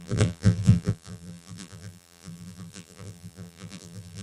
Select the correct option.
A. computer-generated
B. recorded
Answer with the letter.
A